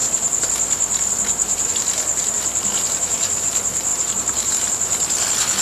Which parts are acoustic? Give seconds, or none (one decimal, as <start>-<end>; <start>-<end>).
0.0-3.9; 4.5-5.6